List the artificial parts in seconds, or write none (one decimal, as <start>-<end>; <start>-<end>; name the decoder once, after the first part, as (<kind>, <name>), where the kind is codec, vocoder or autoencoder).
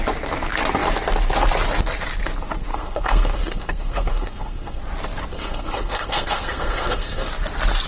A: 2.7-4.8 (codec, SNAC); 5.3-7.3